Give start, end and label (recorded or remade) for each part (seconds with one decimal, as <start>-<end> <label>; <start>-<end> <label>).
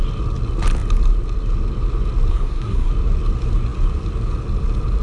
0.0-2.3 recorded; 2.3-2.9 remade; 2.9-5.0 recorded